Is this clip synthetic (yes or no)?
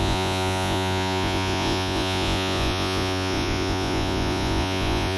yes